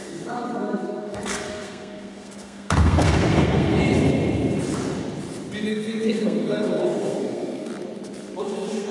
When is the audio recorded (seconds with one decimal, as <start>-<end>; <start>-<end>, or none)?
3.8-5.7; 7.7-8.4